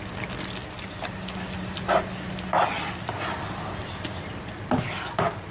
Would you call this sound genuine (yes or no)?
yes